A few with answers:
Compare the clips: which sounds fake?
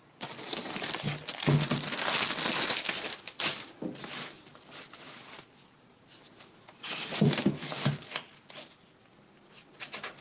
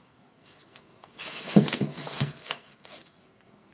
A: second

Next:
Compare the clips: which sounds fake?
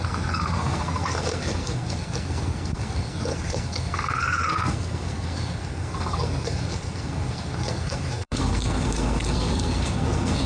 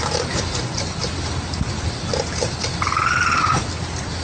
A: first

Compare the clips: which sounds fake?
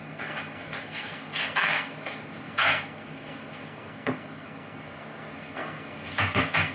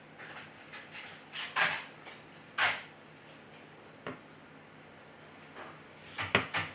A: first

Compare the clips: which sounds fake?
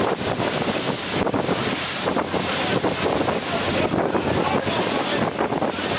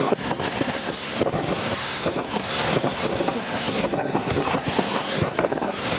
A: second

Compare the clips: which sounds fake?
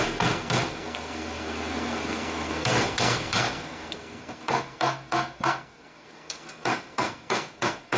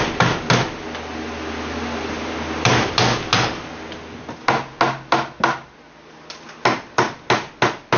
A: first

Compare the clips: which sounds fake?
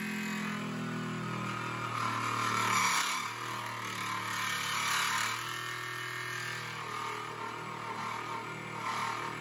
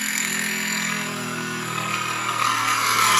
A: second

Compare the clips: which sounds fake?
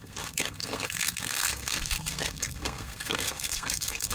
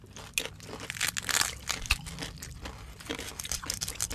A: first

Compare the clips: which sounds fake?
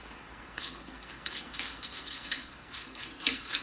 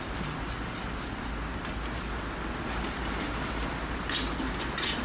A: first